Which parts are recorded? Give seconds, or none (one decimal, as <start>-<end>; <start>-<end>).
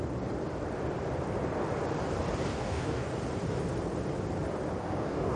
0.0-2.5; 3.1-4.8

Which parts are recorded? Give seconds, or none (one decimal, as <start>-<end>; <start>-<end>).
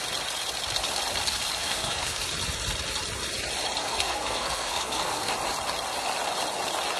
0.0-1.6; 2.2-3.8; 5.3-7.0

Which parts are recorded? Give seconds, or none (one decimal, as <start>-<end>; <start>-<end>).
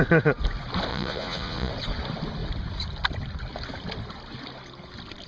0.0-0.9; 1.7-5.3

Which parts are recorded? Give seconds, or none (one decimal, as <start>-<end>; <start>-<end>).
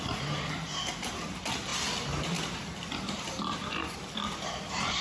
0.0-5.0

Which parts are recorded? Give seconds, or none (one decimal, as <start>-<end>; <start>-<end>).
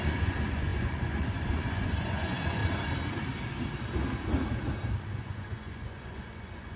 2.6-5.0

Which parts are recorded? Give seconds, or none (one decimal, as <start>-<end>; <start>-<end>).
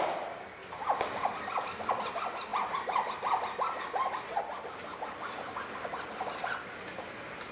0.0-7.5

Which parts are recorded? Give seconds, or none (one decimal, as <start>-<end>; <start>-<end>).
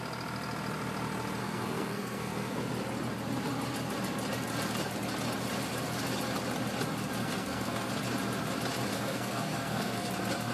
0.0-1.4; 2.7-7.2; 7.9-8.9; 10.1-10.5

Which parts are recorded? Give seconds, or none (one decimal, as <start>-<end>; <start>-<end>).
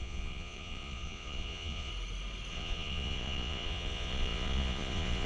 1.9-2.5